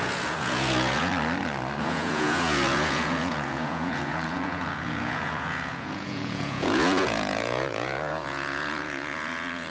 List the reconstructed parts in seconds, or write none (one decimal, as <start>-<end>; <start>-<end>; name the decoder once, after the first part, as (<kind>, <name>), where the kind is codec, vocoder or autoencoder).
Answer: 0.0-1.1 (vocoder, Vocos); 1.8-9.7